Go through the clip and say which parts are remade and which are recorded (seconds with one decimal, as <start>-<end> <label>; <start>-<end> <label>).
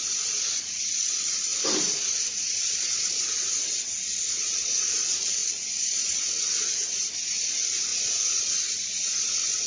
0.0-1.5 remade; 1.5-2.3 recorded; 2.3-5.4 remade; 5.4-7.5 recorded; 7.5-7.9 remade; 7.9-8.4 recorded; 8.4-9.7 remade